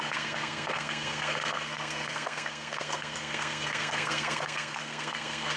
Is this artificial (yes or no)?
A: yes